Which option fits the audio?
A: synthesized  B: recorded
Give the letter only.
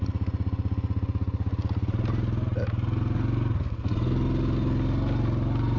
B